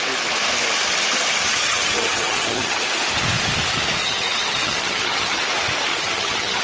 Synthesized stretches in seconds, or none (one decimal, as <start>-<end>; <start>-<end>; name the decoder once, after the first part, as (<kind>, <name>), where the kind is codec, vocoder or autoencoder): 1.4-2.8 (vocoder, HiFi-GAN); 4.0-5.4; 5.9-6.6